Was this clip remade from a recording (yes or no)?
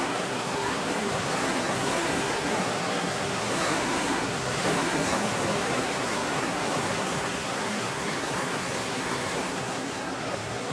yes